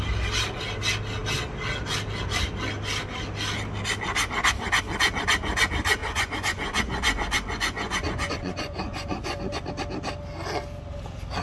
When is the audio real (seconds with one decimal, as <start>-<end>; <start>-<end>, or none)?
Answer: 0.0-6.0; 9.7-11.4